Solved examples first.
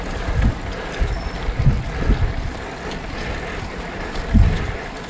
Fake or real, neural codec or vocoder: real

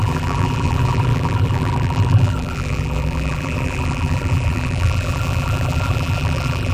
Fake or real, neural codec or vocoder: fake, vocoder, BigVGAN v2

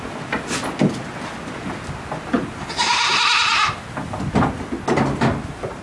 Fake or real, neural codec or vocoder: real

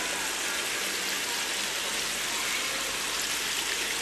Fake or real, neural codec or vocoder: real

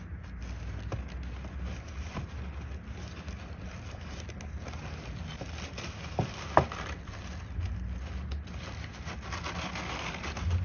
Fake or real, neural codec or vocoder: real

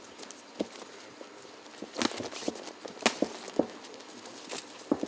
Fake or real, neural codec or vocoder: real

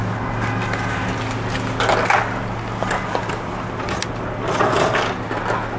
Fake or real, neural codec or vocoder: real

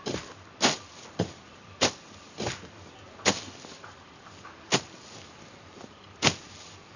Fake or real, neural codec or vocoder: real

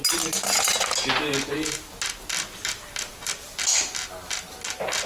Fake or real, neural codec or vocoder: real